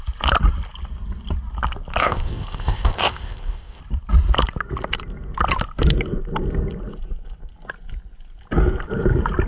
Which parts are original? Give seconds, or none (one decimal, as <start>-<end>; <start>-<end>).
0.0-2.0; 3.8-9.5